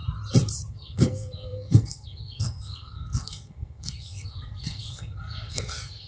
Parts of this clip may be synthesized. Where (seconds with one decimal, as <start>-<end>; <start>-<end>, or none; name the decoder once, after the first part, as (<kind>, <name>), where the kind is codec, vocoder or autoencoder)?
0.7-6.1 (codec, SNAC)